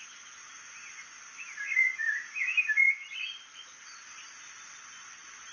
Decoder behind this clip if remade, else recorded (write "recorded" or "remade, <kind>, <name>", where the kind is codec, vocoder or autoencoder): recorded